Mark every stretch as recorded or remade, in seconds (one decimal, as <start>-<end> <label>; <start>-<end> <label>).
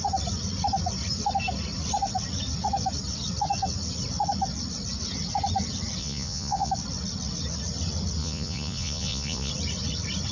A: 0.0-6.0 recorded; 6.0-6.7 remade; 6.7-8.2 recorded; 8.2-9.5 remade; 9.5-10.3 recorded